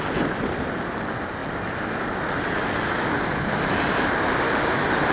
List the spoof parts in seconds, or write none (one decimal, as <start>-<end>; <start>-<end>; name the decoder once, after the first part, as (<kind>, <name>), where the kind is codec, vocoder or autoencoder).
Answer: none